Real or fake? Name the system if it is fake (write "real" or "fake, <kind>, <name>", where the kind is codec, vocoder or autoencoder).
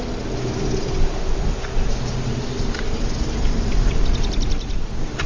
real